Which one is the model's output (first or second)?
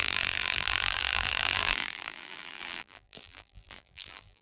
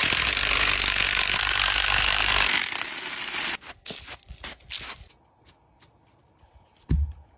first